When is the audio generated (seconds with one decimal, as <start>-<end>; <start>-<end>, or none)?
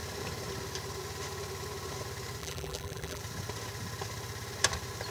2.4-3.2